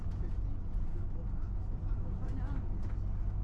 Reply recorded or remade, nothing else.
recorded